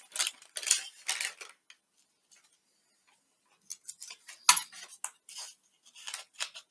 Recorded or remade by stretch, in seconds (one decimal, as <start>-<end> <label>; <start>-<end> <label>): 0.0-6.7 recorded